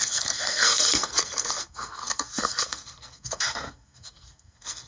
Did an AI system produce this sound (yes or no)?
yes